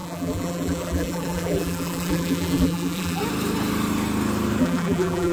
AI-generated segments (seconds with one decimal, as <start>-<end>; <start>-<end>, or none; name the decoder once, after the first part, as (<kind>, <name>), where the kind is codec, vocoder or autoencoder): 0.0-3.2 (vocoder, BigVGAN v2); 4.6-5.3